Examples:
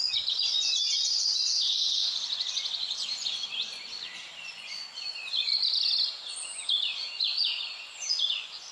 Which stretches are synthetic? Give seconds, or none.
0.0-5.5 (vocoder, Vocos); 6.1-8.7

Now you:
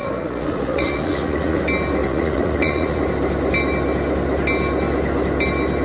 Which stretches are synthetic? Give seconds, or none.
0.0-1.6 (vocoder, Vocos); 2.0-3.0

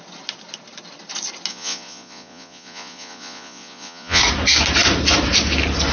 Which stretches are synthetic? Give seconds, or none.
1.5-4.2 (vocoder, Vocos)

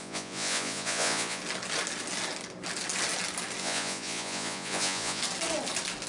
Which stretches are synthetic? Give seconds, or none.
0.0-1.4 (vocoder, Vocos); 3.6-5.2

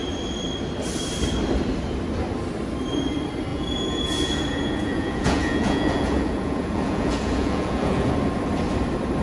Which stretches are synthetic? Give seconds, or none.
3.5-8.1 (vocoder, Vocos)

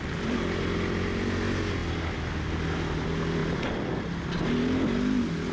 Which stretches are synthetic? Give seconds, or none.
none

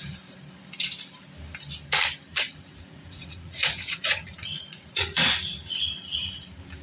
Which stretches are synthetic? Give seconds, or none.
2.3-5.5 (vocoder, Vocos)